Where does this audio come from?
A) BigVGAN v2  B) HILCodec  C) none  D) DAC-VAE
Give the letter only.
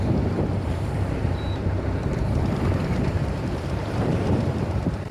A